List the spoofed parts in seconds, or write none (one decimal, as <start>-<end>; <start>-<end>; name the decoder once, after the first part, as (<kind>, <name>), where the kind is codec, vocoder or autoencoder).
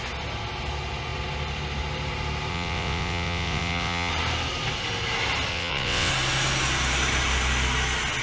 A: 2.5-4.1 (vocoder, WaveNeXt); 5.5-6.1